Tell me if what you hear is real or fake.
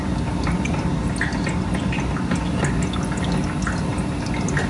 real